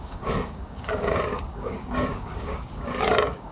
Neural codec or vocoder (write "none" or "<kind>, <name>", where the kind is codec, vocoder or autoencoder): codec, DAC